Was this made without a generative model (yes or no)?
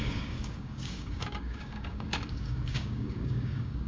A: no